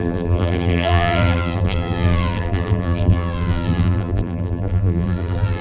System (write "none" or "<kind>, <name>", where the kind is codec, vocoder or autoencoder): vocoder, BigVGAN v2